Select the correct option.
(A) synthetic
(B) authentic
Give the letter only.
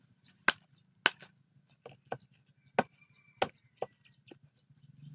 B